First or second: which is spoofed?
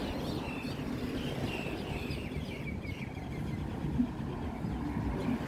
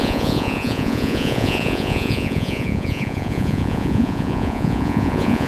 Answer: second